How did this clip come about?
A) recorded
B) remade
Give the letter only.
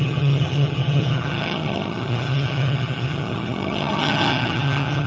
B